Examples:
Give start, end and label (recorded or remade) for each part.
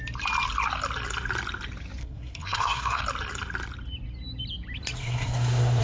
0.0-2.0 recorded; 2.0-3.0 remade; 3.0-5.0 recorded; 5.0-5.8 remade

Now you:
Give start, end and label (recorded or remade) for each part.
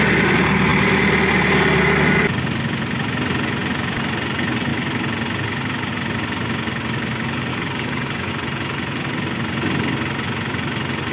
0.0-7.5 recorded; 7.5-8.3 remade; 8.3-11.1 recorded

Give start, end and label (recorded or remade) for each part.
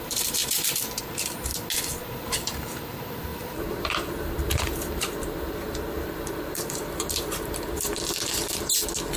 0.0-1.5 remade; 1.5-2.1 recorded; 2.1-7.9 remade; 7.9-9.2 recorded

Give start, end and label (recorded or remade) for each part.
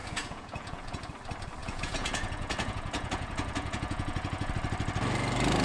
0.0-1.0 remade; 1.0-1.6 recorded; 1.6-4.5 remade; 4.5-5.6 recorded